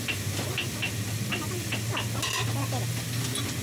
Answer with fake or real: real